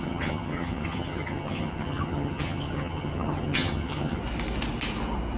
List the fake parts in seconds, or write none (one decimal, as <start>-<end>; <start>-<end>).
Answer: 0.0-4.2